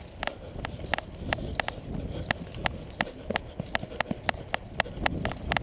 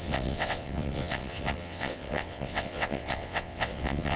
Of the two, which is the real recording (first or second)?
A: first